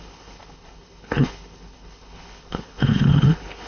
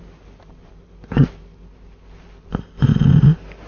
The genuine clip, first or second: second